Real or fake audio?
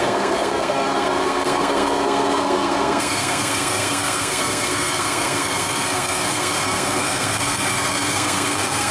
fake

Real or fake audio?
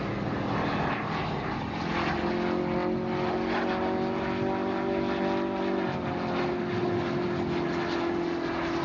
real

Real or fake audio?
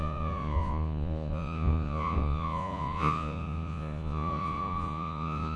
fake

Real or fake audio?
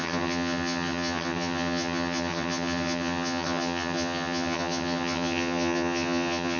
fake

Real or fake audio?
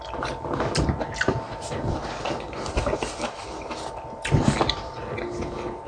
real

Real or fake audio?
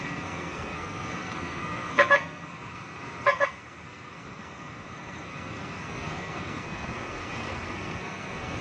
fake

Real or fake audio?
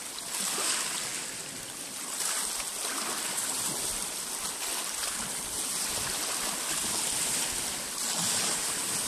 real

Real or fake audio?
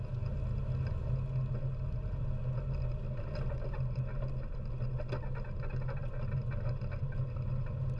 real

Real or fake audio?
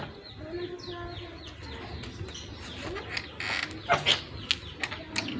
real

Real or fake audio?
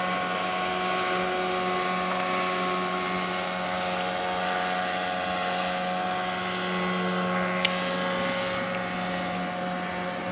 real